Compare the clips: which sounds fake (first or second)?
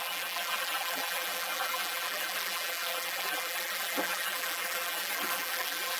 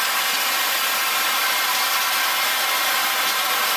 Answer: first